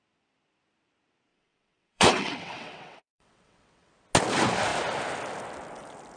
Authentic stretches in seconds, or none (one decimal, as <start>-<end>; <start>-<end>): 0.0-1.3; 3.9-6.2